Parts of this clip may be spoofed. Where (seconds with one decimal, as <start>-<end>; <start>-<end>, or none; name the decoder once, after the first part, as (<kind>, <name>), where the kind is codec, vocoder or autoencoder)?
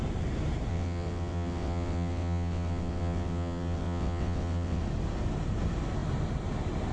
0.7-4.8 (vocoder, WaveNeXt)